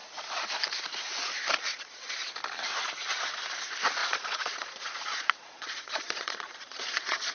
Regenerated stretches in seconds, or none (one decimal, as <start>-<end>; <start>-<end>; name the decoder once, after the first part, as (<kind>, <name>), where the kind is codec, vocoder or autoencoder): 1.7-2.3 (vocoder, Vocos); 4.0-7.3